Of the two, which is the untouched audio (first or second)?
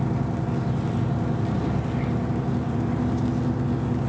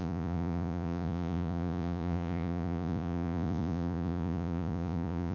first